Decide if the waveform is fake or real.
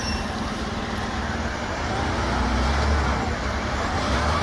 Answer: real